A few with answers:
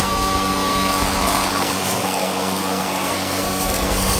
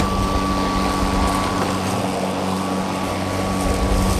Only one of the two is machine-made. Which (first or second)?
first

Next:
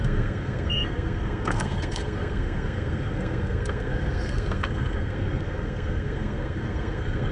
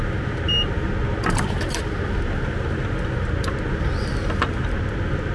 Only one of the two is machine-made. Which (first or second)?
first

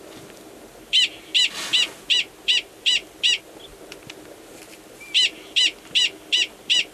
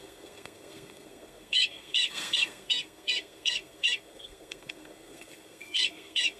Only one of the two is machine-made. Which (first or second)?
second